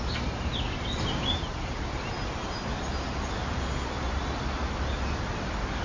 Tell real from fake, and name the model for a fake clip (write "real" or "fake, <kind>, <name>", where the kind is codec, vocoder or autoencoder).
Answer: real